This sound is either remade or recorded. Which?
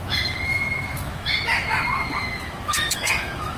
remade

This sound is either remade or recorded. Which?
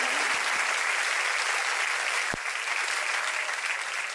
recorded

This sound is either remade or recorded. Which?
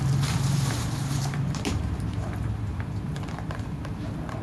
remade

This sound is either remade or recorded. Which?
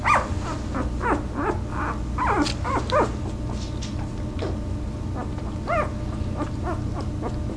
recorded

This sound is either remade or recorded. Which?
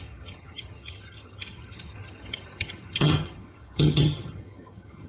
remade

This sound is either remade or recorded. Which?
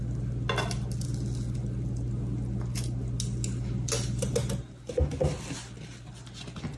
recorded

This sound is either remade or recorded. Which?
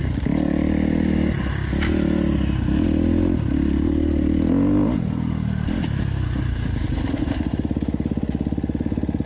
recorded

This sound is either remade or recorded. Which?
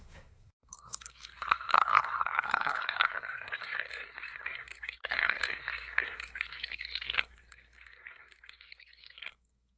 remade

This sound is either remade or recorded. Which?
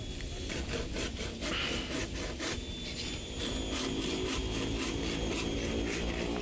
recorded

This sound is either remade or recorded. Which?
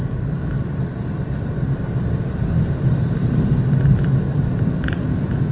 remade